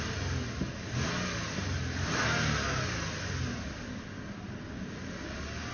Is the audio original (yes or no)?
yes